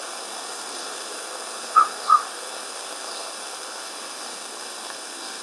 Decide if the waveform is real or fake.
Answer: fake